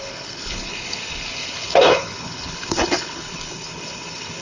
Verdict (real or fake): fake